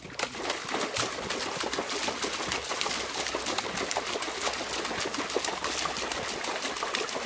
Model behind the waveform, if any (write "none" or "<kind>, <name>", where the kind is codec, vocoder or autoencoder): none